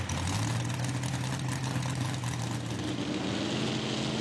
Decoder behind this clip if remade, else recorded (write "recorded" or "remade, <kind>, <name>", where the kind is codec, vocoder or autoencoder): recorded